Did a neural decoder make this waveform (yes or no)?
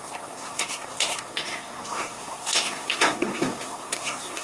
yes